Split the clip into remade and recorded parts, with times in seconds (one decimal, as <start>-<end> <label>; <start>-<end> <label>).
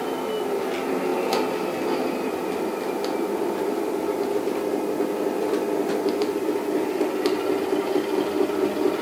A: 0.0-9.0 recorded